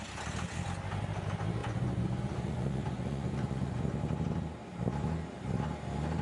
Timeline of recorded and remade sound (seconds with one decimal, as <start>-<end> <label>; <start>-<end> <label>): 0.0-1.6 recorded; 1.6-3.8 remade; 3.8-6.2 recorded